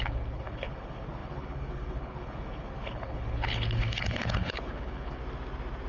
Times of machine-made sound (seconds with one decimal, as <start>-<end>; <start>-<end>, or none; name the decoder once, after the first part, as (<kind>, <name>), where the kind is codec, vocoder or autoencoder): 0.0-5.2 (codec, HILCodec)